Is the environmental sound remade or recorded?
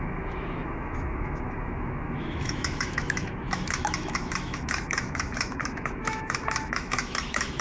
remade